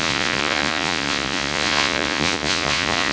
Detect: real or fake fake